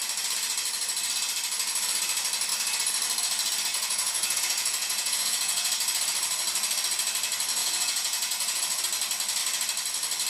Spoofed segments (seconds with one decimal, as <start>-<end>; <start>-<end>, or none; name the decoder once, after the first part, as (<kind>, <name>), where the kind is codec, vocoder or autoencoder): 3.7-5.7 (vocoder, Vocos); 7.6-8.8